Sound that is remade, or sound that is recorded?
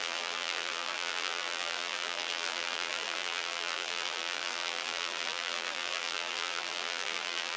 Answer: remade